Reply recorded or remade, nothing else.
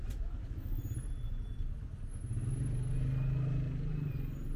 recorded